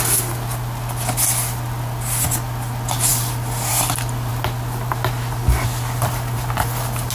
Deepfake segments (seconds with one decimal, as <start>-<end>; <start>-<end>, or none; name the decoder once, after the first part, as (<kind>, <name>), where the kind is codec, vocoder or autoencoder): none